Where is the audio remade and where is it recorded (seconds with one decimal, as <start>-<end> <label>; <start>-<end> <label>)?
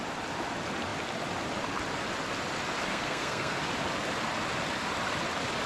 0.0-2.9 recorded; 2.9-3.6 remade; 3.6-5.7 recorded